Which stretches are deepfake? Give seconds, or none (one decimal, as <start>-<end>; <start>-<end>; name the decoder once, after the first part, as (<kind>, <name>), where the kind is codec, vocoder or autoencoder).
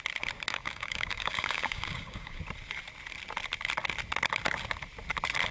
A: 0.5-2.4 (codec, DAC)